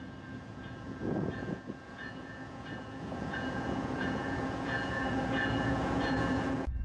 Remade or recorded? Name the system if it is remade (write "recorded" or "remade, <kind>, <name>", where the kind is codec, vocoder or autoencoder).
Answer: remade, vocoder, Vocos